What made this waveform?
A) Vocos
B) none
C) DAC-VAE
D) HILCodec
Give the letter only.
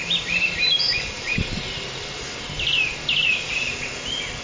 B